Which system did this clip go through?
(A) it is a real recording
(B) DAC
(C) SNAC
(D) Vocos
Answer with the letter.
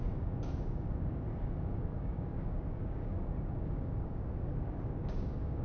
B